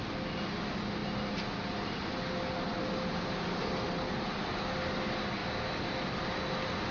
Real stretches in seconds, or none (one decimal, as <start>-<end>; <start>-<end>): 0.0-6.9